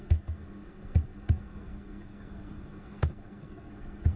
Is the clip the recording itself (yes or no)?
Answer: no